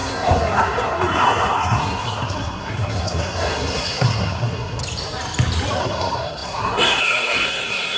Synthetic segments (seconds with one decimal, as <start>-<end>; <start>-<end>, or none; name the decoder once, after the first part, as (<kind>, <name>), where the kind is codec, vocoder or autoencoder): 0.0-4.8 (codec, SNAC); 5.8-8.0